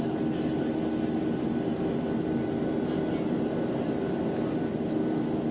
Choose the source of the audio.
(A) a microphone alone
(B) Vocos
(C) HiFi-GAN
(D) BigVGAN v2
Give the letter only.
A